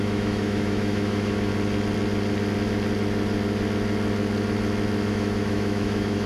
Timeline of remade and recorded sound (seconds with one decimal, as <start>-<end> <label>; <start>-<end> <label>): 0.0-1.5 remade; 1.5-5.1 recorded; 5.1-6.3 remade